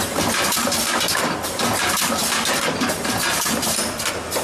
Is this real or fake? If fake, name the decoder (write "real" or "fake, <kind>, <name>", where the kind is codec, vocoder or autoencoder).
fake, vocoder, BigVGAN v2